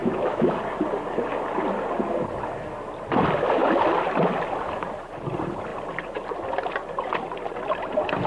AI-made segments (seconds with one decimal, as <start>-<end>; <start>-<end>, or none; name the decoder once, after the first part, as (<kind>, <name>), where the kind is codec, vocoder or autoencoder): 0.0-0.6 (autoencoder, DAC-VAE)